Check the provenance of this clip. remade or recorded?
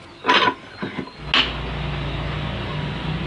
recorded